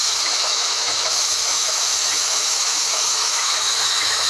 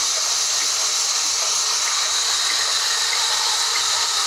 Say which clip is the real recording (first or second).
second